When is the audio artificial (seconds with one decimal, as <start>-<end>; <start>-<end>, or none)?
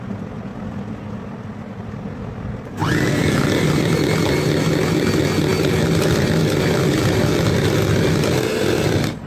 none